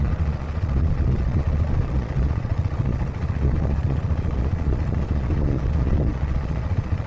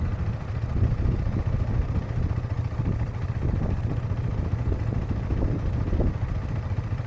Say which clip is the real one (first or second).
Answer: second